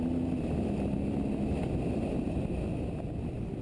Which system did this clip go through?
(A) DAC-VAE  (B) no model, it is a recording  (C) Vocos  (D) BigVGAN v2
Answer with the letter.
B